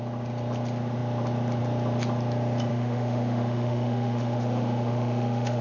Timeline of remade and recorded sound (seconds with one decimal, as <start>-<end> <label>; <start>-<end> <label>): 0.0-2.7 recorded; 2.7-5.6 remade